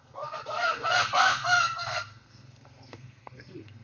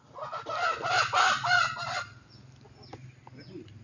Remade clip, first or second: first